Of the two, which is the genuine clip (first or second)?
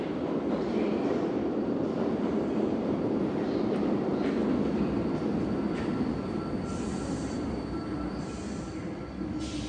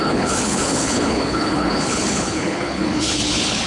first